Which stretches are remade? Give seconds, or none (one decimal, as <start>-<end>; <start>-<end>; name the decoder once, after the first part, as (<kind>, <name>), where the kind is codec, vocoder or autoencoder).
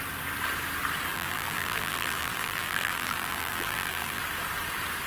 1.1-4.2 (vocoder, BigVGAN v2)